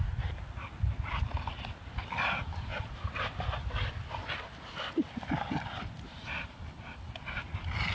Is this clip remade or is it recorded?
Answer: recorded